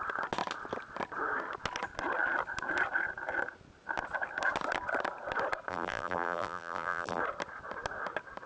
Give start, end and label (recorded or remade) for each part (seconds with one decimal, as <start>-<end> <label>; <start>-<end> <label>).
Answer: 0.0-5.7 recorded; 5.7-7.2 remade; 7.2-8.5 recorded